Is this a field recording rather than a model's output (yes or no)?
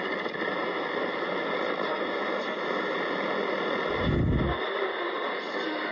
yes